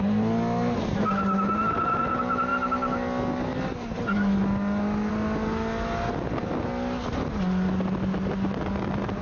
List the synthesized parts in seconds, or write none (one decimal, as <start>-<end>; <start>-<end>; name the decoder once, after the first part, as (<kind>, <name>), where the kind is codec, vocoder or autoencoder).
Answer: none